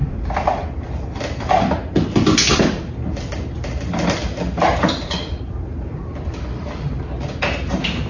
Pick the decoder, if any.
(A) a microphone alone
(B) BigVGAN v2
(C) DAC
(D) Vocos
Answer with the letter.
B